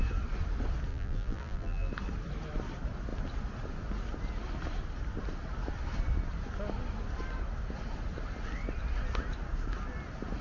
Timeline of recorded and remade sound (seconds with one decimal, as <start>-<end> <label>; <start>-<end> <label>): 0.0-0.9 recorded; 0.9-1.9 remade; 1.9-10.4 recorded